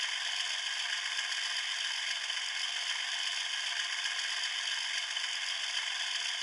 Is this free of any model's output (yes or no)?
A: yes